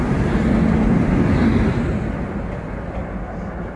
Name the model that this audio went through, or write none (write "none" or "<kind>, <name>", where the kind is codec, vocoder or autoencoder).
none